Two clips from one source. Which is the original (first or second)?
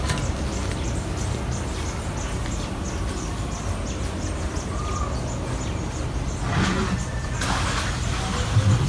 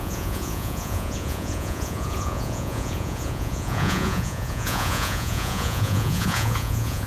first